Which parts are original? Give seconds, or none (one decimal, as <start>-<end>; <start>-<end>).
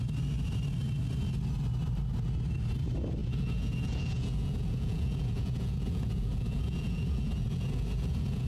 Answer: 0.0-3.2